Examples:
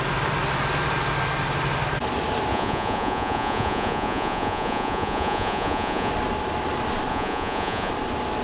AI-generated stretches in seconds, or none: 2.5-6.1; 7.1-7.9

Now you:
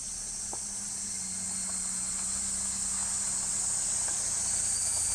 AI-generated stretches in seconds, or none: none

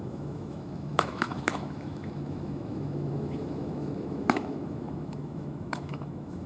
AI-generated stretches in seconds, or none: 0.0-6.5

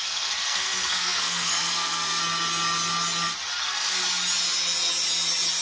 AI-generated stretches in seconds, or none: 0.0-2.2; 3.6-4.0

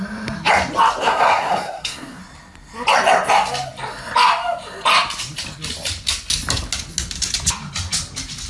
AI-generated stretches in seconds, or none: 1.0-2.2

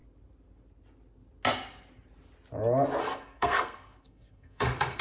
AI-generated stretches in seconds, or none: 3.0-5.0

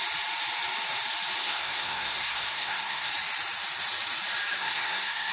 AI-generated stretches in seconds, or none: 1.4-3.1; 4.6-5.3